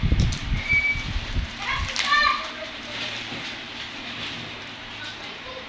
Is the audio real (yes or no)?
no